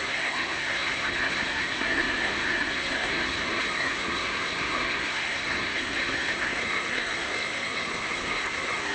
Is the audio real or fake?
fake